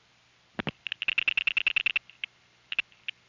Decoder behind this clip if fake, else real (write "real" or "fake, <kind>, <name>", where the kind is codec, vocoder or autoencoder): real